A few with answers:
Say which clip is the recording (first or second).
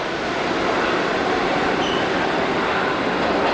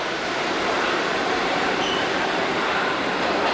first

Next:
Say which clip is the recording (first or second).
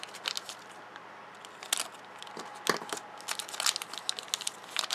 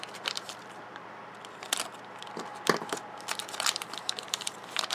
first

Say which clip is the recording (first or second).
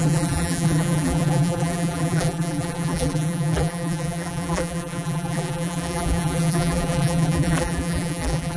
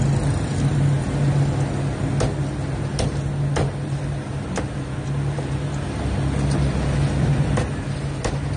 second